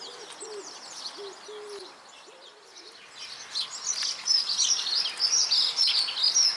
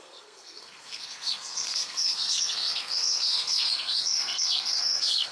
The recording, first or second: first